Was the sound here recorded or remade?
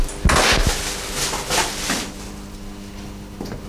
recorded